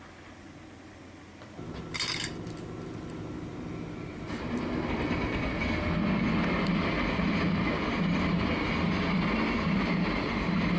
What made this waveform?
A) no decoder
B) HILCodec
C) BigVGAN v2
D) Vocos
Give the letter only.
A